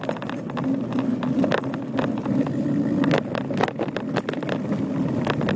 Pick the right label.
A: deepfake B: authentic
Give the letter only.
B